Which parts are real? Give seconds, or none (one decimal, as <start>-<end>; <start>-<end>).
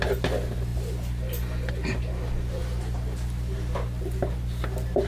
0.0-5.1